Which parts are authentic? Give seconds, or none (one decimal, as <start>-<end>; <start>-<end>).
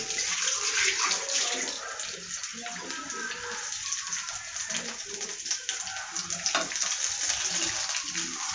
0.0-8.5